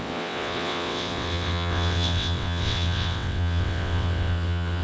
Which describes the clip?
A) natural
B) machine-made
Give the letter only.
B